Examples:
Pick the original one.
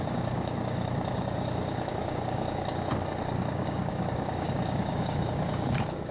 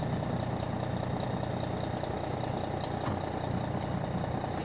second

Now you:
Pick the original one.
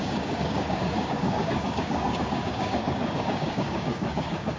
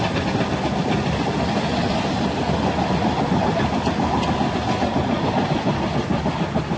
second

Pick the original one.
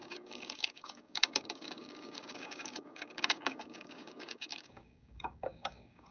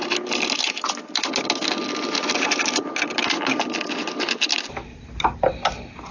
second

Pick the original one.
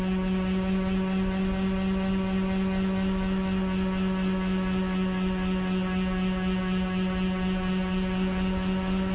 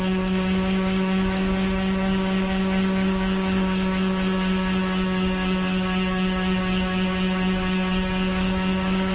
first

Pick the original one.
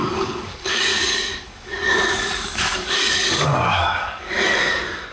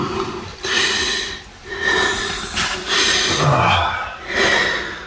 second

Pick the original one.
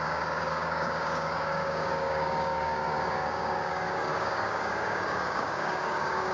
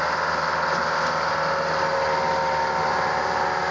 second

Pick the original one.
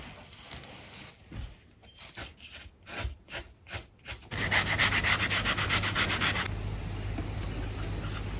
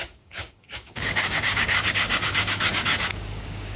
first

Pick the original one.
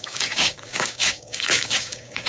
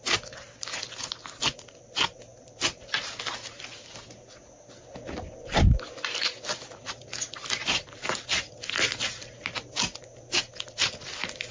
second